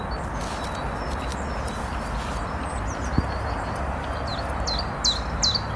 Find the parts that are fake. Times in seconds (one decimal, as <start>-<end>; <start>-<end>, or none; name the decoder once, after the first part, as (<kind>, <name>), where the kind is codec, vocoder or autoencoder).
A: none